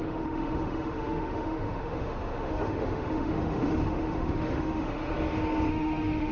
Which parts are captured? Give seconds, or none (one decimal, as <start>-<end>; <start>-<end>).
5.1-5.7

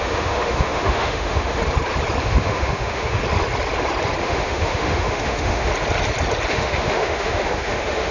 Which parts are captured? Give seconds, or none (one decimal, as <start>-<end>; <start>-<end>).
1.6-2.2; 3.2-4.2; 5.7-6.5

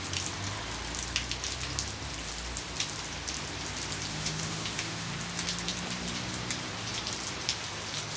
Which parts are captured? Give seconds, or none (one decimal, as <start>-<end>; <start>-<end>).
0.0-4.1; 5.1-8.2

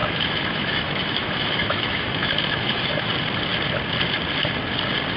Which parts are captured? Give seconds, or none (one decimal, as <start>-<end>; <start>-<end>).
3.1-5.2

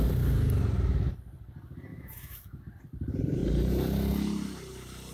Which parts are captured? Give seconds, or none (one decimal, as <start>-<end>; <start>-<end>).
0.0-1.9; 2.6-5.1